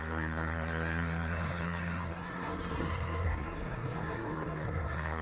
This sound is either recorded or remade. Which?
remade